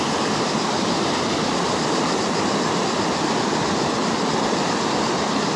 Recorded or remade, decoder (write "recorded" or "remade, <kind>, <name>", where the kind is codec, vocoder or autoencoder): remade, vocoder, BigVGAN v2